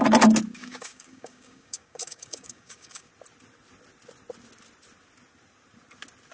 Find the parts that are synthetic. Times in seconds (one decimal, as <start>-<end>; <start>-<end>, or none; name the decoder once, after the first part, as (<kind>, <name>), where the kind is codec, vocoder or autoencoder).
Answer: 0.6-3.1 (codec, DAC)